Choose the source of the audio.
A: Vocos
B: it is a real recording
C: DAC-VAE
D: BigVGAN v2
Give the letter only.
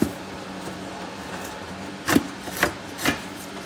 B